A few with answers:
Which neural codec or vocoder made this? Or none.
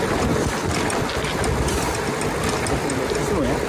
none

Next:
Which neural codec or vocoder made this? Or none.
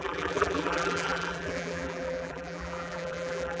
vocoder, BigVGAN v2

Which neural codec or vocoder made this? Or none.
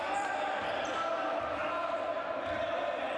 vocoder, BigVGAN v2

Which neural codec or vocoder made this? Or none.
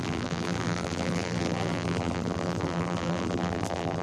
vocoder, BigVGAN v2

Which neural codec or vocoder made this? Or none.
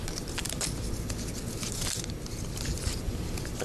none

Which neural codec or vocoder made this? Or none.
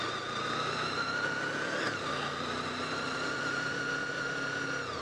none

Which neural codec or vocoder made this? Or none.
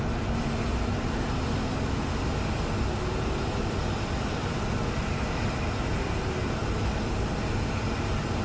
none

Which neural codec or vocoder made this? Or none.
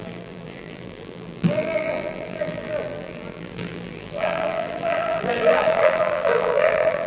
vocoder, BigVGAN v2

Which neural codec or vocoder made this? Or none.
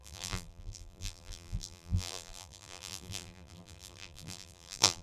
vocoder, BigVGAN v2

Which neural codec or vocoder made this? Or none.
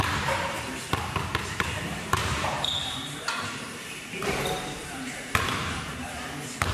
vocoder, BigVGAN v2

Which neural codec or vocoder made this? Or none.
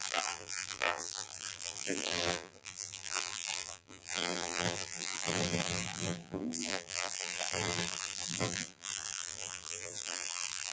vocoder, BigVGAN v2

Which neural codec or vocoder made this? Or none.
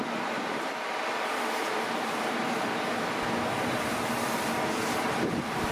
vocoder, BigVGAN v2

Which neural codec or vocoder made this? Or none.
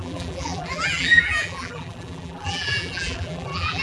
vocoder, BigVGAN v2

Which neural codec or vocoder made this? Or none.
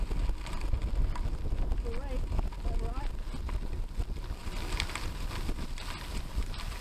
none